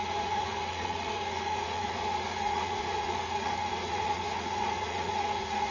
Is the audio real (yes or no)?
no